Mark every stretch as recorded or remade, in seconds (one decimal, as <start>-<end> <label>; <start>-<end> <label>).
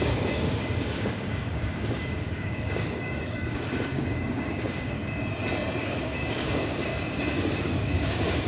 0.0-5.0 remade; 5.0-5.8 recorded; 5.8-6.9 remade; 6.9-7.6 recorded; 7.6-8.5 remade